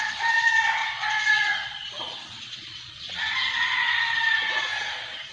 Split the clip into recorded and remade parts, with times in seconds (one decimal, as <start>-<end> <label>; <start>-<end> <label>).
0.0-0.8 recorded; 0.8-3.2 remade; 3.2-4.7 recorded; 4.7-5.3 remade